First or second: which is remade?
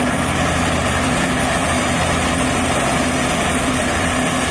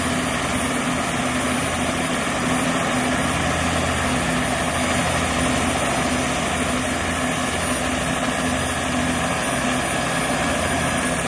first